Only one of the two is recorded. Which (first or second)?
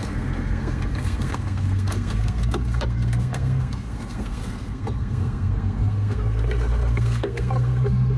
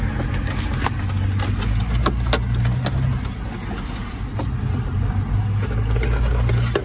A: second